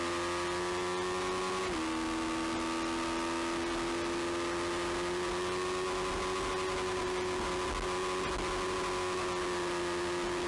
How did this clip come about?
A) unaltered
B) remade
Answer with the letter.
A